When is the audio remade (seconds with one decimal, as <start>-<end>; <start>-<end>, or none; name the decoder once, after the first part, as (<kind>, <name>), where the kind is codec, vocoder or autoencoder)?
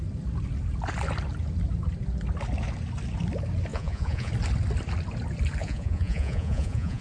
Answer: 3.7-4.3 (vocoder, Vocos); 5.6-7.0